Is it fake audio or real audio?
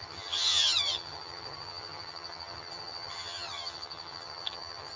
fake